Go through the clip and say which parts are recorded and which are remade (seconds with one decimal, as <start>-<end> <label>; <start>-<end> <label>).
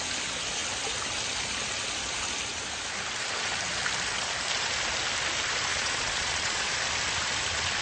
0.0-5.7 recorded; 5.7-6.7 remade; 6.7-7.8 recorded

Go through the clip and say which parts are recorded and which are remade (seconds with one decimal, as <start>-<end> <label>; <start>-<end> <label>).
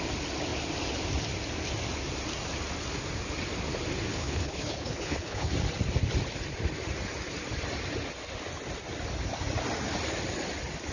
0.0-4.1 recorded; 4.1-5.5 remade; 5.5-10.9 recorded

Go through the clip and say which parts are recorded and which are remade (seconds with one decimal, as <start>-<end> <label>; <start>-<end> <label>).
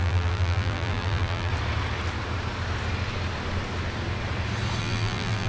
0.0-1.5 remade; 1.5-4.8 recorded; 4.8-5.5 remade